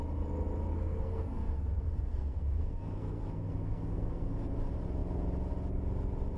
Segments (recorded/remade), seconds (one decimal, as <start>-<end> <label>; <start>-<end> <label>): 0.0-0.7 recorded; 0.7-4.5 remade; 4.5-6.4 recorded